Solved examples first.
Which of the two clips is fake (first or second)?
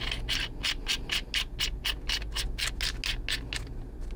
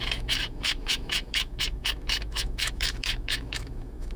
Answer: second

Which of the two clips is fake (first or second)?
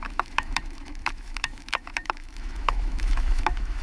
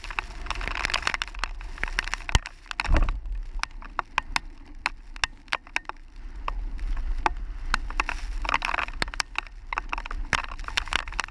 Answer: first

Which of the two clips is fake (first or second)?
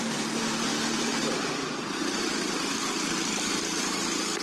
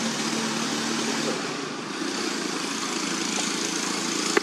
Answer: first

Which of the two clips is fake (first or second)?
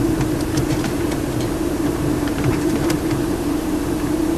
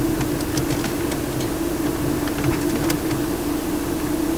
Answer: first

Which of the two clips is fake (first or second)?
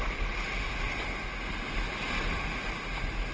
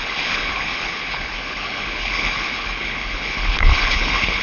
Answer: second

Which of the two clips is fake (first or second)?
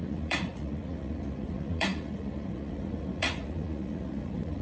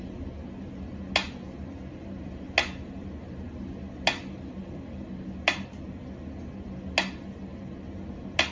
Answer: first